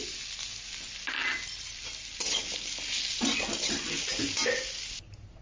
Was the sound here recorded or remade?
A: recorded